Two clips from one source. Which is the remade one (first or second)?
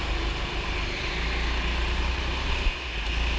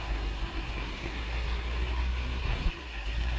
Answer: second